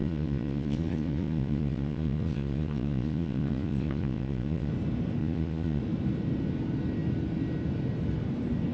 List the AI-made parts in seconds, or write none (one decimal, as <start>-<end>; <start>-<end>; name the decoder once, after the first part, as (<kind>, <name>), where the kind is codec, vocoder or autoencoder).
0.0-4.7 (vocoder, Vocos); 5.2-5.8